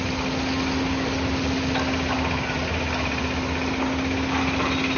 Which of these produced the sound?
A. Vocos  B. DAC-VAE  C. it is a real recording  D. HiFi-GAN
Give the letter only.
C